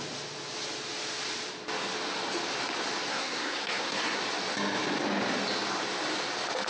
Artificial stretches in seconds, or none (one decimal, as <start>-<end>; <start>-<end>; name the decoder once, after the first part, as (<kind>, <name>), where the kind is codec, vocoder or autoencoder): 3.1-4.2 (codec, SNAC)